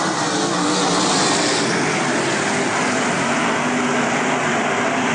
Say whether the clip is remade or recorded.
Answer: recorded